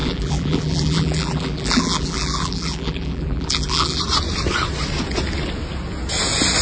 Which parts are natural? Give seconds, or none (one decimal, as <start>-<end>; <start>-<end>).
4.0-6.6